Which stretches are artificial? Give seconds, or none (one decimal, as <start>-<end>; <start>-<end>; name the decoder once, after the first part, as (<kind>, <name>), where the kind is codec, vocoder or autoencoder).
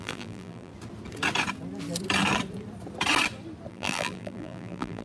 0.0-0.7 (vocoder, BigVGAN v2); 3.7-5.0